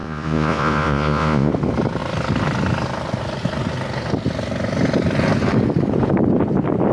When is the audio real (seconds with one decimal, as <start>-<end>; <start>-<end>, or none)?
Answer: 1.5-6.9